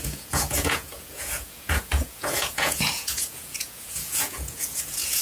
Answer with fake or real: fake